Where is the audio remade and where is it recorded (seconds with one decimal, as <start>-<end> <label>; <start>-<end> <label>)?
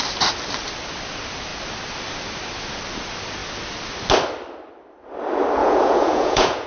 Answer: 0.0-5.6 recorded; 5.6-6.7 remade